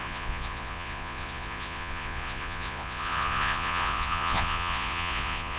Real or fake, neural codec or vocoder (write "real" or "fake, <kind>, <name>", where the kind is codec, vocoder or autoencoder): fake, vocoder, Vocos